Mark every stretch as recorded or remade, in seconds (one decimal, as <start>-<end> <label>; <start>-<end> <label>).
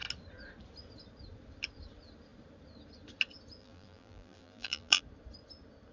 0.0-3.6 recorded; 3.6-5.0 remade; 5.0-5.9 recorded